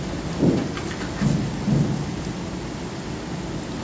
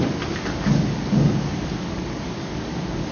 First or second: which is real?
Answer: first